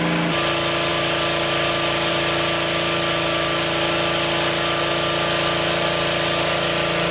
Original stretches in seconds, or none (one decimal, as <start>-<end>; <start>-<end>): 0.0-7.1